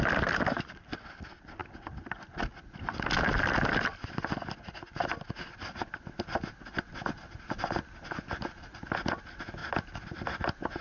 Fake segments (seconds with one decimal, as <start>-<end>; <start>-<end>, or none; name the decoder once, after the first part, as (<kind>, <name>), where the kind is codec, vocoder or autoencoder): none

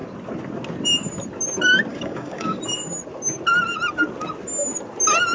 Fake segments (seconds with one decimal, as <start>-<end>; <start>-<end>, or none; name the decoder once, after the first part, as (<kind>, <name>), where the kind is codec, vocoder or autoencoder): 1.9-2.6 (codec, DAC)

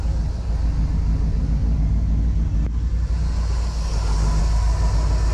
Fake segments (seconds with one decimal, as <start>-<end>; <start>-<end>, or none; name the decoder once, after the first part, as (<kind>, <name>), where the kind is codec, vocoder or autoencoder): 0.0-1.6 (vocoder, BigVGAN v2); 4.4-5.3

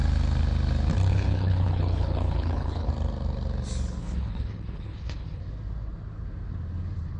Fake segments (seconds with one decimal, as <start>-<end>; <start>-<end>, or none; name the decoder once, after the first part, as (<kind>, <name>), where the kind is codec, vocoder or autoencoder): 1.1-2.9 (codec, HILCodec); 4.0-5.4

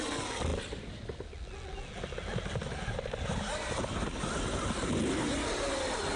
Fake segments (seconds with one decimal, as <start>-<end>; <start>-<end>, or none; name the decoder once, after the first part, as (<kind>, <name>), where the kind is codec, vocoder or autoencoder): none